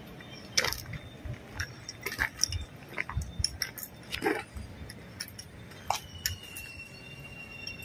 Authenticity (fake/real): real